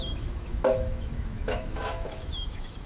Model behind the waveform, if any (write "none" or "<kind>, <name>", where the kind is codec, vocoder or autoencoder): autoencoder, DAC-VAE